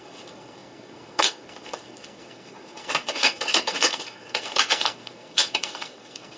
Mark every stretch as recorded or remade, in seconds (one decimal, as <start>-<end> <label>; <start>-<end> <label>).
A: 0.0-6.4 remade